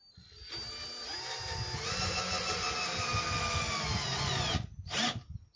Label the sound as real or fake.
real